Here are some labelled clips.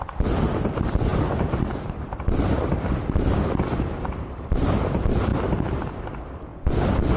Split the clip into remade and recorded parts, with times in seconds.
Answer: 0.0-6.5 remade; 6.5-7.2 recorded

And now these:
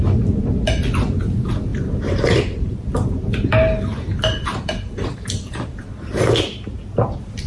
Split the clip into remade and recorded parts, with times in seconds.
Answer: 0.0-1.7 recorded; 1.7-6.2 remade; 6.2-7.5 recorded

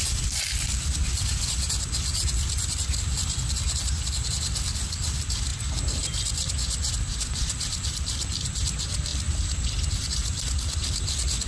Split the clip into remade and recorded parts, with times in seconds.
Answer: 0.0-11.5 recorded

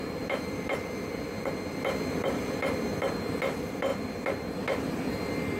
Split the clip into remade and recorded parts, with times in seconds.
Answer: 0.0-5.6 recorded

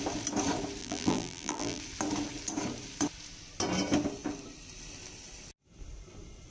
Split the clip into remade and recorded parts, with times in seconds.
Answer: 0.0-0.8 recorded; 0.8-1.8 remade; 1.8-6.5 recorded

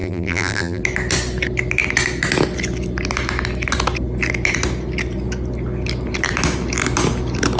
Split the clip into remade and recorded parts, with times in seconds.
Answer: 0.0-0.8 remade; 0.8-7.6 recorded

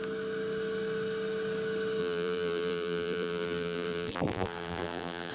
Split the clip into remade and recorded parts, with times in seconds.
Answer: 0.0-2.0 recorded; 2.0-5.3 remade